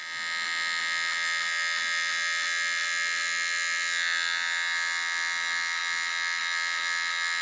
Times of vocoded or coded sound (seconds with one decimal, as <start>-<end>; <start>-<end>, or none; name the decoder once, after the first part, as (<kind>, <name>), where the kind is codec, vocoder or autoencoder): none